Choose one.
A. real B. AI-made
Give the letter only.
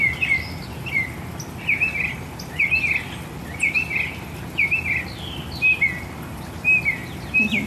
A